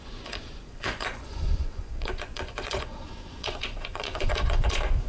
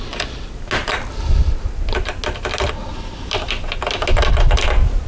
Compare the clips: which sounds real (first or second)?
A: second